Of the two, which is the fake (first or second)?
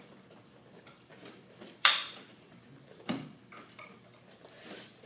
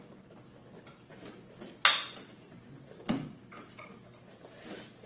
first